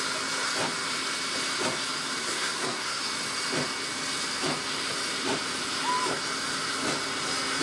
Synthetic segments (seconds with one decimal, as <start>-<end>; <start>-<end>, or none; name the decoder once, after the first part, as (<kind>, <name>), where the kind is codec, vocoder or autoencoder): 2.2-3.0 (codec, SNAC)